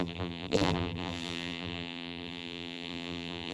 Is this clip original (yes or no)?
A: no